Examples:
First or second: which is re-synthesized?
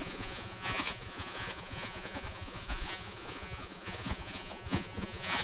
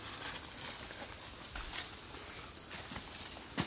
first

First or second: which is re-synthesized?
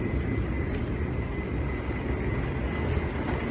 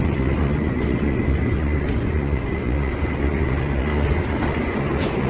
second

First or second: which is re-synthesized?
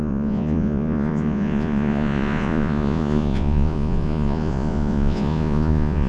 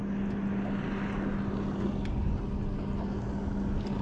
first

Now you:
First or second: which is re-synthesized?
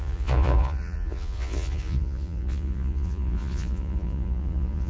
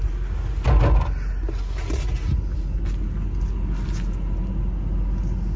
first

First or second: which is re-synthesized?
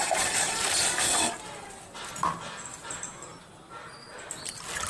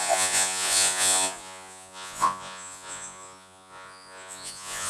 second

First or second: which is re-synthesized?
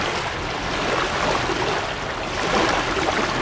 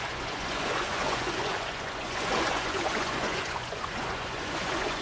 second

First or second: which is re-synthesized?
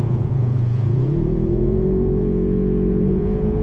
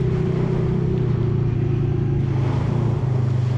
first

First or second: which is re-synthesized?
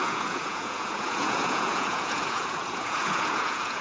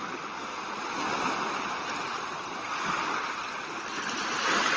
first